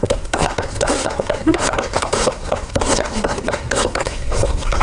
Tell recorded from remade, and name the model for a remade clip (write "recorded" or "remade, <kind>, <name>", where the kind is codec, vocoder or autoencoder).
remade, codec, SNAC